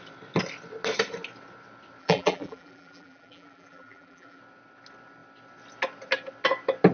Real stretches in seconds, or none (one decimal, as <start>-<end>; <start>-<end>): 0.0-2.0; 4.4-6.9